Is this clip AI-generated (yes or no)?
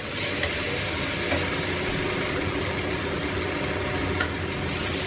no